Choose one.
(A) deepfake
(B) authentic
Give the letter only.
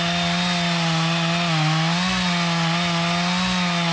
B